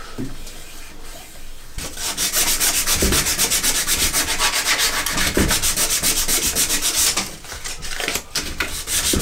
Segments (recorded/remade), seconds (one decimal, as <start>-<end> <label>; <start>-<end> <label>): 0.0-9.2 recorded